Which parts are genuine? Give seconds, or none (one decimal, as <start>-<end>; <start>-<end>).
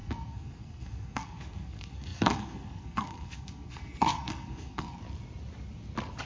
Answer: 5.0-6.3